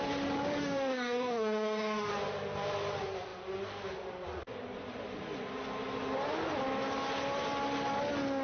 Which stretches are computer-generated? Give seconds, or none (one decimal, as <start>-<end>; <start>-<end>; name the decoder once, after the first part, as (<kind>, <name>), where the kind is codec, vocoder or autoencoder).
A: 0.6-2.1 (autoencoder, DAC-VAE)